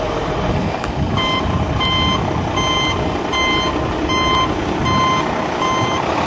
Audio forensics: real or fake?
real